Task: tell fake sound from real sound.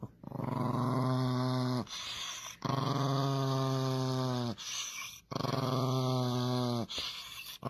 real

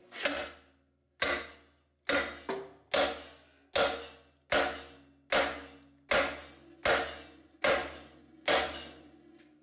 real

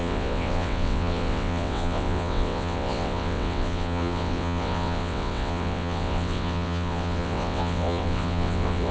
fake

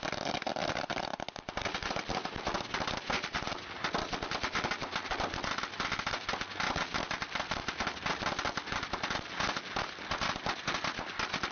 real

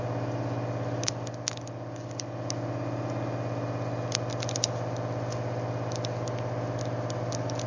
real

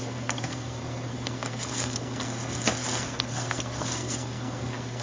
fake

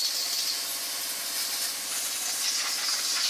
real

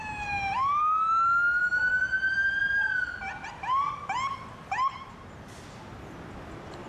real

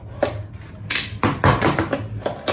real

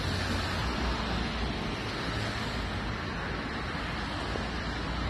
real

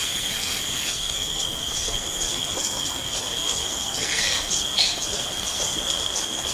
fake